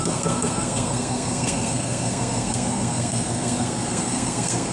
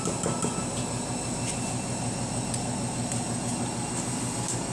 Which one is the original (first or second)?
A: second